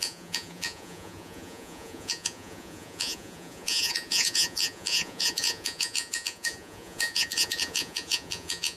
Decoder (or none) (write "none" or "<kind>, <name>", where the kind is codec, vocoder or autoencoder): vocoder, Vocos